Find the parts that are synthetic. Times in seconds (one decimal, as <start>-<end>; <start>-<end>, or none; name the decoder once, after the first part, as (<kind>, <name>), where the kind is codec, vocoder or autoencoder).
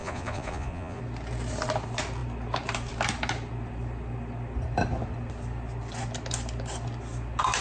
0.0-1.0 (vocoder, Vocos)